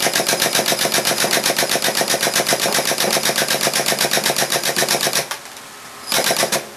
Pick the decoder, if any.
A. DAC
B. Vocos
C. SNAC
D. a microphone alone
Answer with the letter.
D